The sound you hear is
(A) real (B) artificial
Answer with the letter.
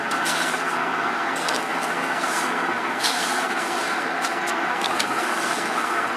B